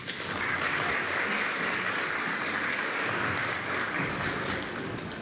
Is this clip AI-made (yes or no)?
yes